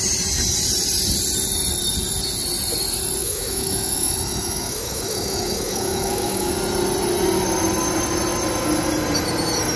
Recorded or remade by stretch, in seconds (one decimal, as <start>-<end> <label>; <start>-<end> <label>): 0.0-3.2 recorded; 3.2-6.5 remade; 6.5-9.8 recorded